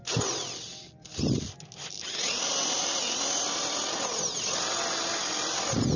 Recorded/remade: recorded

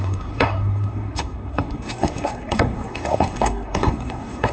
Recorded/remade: remade